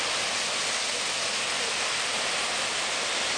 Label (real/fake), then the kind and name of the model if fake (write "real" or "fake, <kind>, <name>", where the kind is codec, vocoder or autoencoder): real